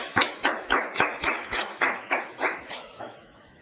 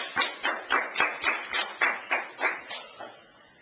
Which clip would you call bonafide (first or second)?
second